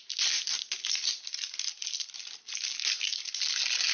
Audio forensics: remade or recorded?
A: recorded